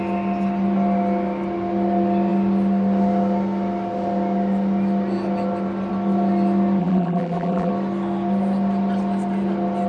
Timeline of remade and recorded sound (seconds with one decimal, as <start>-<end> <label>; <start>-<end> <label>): 0.0-6.8 recorded; 6.8-7.7 remade; 7.7-9.9 recorded